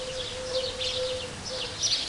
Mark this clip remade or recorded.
recorded